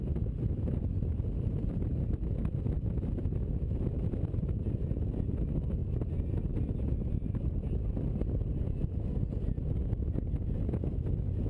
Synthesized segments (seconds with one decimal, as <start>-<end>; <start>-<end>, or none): none